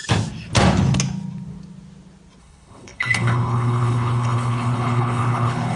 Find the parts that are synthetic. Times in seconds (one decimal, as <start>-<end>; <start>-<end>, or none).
2.4-5.8